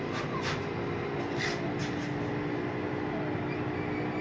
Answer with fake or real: real